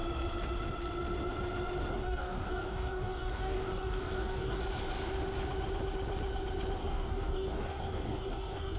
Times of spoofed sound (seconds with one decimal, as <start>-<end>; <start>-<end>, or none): 2.0-4.6; 6.8-8.8